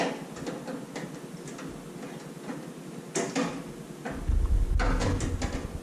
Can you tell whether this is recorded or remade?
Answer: recorded